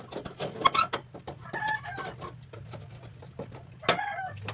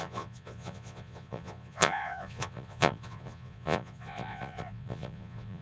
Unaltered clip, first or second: first